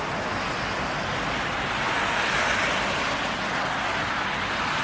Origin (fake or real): real